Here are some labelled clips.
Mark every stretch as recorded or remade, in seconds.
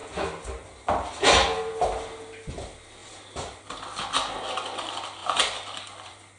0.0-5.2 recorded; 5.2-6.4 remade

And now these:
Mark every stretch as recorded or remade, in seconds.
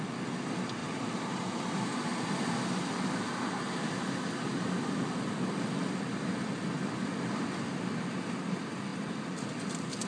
0.0-0.8 recorded; 0.8-1.4 remade; 1.4-8.9 recorded; 8.9-10.1 remade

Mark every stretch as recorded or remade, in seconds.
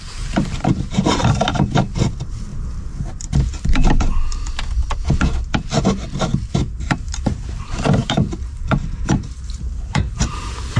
0.0-3.5 remade; 3.5-6.5 recorded; 6.5-10.8 remade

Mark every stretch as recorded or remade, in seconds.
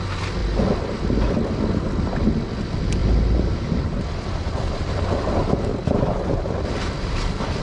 0.0-3.0 recorded; 3.0-7.6 remade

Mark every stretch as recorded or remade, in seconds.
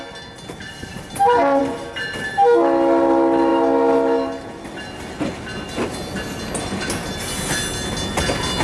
0.0-0.9 recorded; 0.9-1.6 remade; 1.6-8.6 recorded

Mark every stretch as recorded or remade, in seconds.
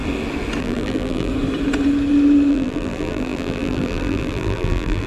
0.0-0.6 recorded; 0.6-1.3 remade; 1.3-2.5 recorded; 2.5-5.1 remade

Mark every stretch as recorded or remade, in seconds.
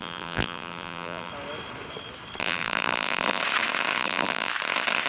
0.0-1.3 remade; 1.3-2.4 recorded; 2.4-3.4 remade; 3.4-4.0 recorded; 4.0-4.5 remade; 4.5-5.1 recorded